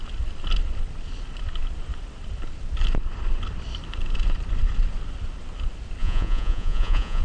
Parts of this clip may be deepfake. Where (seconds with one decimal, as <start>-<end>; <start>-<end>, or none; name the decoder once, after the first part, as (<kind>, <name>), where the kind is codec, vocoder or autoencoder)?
6.0-7.2 (vocoder, Vocos)